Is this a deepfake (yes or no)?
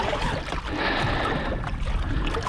no